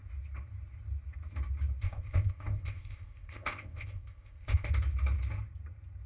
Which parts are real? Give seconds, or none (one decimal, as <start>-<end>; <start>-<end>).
0.0-1.8; 4.7-6.1